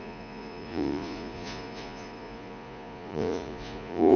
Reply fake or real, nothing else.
fake